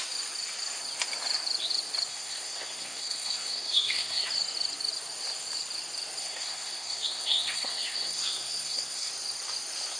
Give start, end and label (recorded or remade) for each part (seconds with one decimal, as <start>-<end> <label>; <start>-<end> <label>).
0.0-2.1 recorded; 2.1-4.3 remade; 4.3-6.2 recorded; 6.2-9.1 remade; 9.1-10.0 recorded

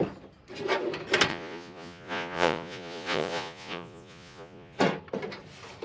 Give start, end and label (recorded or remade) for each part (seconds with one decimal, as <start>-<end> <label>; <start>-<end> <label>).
0.0-1.3 recorded; 1.3-4.8 remade; 4.8-5.8 recorded

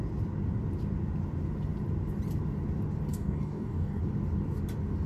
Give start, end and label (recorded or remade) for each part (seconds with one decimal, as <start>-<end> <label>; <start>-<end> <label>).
0.0-3.1 recorded; 3.1-4.0 remade; 4.0-5.1 recorded

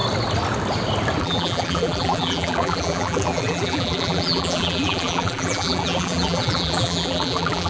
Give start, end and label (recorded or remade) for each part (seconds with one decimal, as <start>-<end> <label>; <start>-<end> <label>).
0.0-1.2 recorded; 1.2-7.7 remade

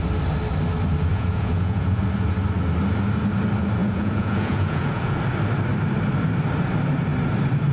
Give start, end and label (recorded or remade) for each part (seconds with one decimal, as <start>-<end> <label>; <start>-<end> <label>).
0.0-1.1 recorded; 1.1-2.0 remade; 2.0-3.8 recorded; 3.8-5.2 remade; 5.2-7.7 recorded

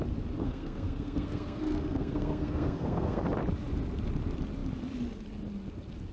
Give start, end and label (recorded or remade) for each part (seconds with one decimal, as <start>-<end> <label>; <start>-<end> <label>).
0.0-0.4 recorded; 0.4-3.2 remade; 3.2-6.1 recorded